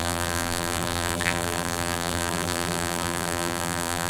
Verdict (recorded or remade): remade